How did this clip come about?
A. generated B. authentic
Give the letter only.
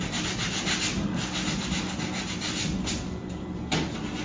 B